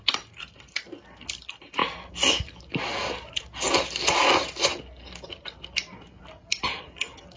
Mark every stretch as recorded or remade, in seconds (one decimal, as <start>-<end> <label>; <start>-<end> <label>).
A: 0.0-1.8 remade; 1.8-6.2 recorded; 6.2-7.4 remade